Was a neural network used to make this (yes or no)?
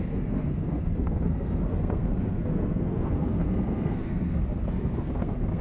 yes